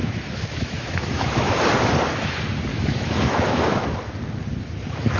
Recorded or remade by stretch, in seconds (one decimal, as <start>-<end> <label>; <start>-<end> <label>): 0.0-1.6 remade; 1.6-2.7 recorded; 2.7-3.8 remade; 3.8-5.2 recorded